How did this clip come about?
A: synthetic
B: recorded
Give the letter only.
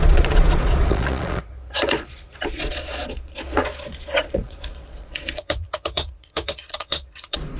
A